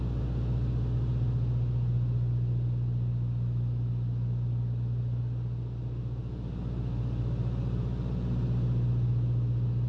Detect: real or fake real